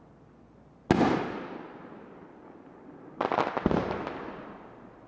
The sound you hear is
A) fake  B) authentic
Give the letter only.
B